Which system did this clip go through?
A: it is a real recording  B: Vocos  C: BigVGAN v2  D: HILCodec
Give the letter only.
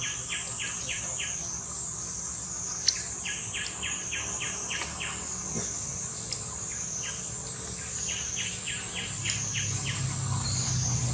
A